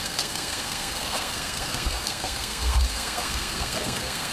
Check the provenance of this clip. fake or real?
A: fake